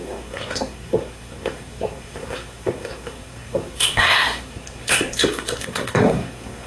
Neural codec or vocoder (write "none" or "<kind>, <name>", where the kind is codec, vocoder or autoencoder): codec, SNAC